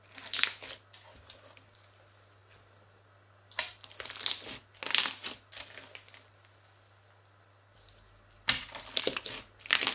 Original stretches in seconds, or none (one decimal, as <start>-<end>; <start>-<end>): 0.0-9.9